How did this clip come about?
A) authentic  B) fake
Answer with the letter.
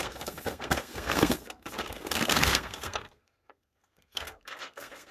B